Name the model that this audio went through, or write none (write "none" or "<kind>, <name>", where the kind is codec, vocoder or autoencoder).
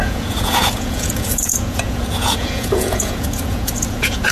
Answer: vocoder, Vocos